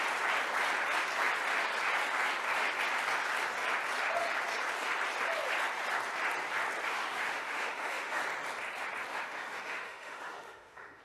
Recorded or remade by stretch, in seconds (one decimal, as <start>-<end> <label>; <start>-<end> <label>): 0.0-6.9 recorded; 6.9-8.2 remade; 8.2-9.1 recorded; 9.1-11.0 remade